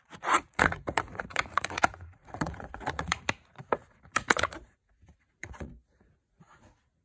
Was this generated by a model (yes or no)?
yes